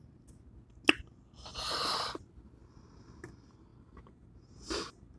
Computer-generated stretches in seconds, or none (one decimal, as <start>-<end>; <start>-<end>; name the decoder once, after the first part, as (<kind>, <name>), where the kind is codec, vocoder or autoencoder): none